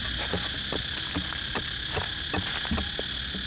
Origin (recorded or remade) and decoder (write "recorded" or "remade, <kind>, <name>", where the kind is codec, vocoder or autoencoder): recorded